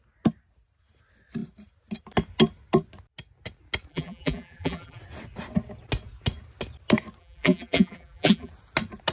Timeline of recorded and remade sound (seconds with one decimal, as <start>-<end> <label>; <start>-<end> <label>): 0.0-3.9 recorded; 3.9-5.0 remade; 5.0-7.2 recorded; 7.2-8.5 remade; 8.5-9.1 recorded